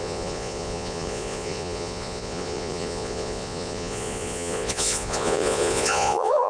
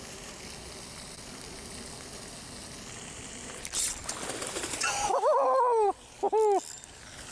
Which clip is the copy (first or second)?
first